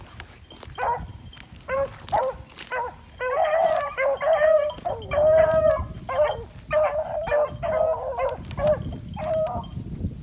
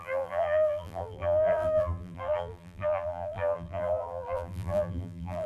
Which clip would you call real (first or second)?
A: first